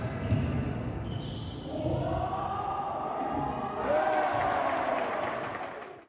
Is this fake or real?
real